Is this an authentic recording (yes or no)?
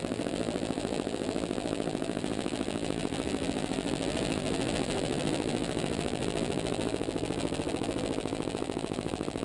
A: no